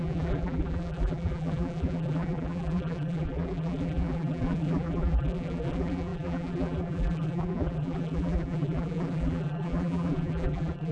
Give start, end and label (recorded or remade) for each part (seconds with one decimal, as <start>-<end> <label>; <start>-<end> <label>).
0.0-10.9 remade